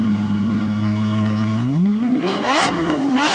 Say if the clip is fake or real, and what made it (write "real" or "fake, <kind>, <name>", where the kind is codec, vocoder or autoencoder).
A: fake, codec, SNAC